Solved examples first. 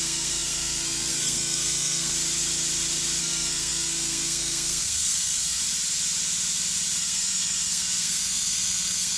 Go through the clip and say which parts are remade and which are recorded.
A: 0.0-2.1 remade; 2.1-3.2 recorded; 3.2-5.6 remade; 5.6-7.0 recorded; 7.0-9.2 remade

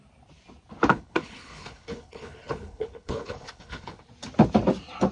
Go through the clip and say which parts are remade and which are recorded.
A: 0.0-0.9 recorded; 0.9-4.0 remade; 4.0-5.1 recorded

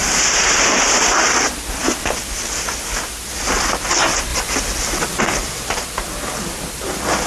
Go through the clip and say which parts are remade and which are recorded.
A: 0.0-7.3 recorded